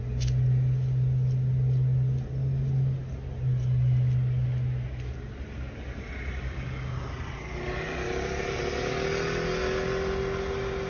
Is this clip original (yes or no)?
yes